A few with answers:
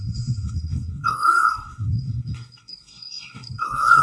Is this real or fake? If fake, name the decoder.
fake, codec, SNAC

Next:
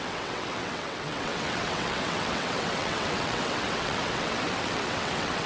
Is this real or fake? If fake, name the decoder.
fake, vocoder, WaveNeXt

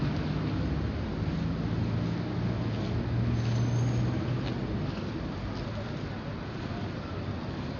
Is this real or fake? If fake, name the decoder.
real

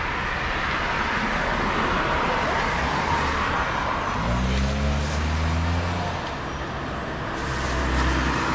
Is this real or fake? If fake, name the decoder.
real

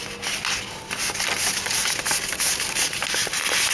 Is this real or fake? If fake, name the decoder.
real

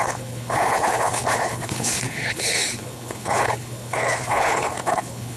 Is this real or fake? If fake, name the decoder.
fake, codec, HILCodec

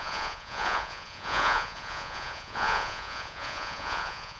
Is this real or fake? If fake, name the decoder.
fake, vocoder, Vocos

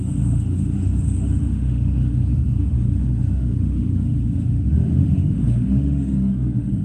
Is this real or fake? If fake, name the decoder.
fake, autoencoder, DAC-VAE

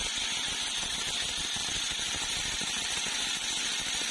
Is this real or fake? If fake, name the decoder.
real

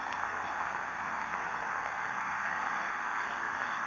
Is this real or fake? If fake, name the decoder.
fake, codec, SNAC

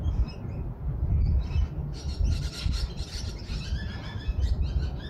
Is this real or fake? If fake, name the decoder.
real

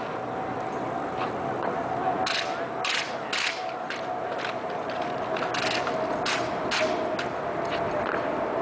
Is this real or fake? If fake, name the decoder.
real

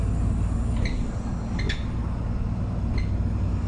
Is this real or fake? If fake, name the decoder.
real